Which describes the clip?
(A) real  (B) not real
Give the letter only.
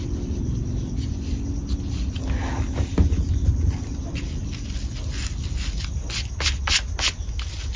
A